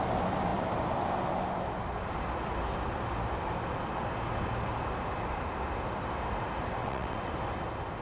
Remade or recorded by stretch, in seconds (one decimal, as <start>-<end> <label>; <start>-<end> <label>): 0.0-6.8 recorded; 6.8-7.3 remade; 7.3-8.0 recorded